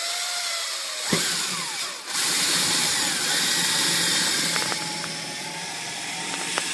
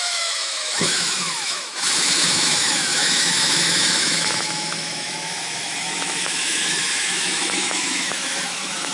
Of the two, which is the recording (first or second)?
first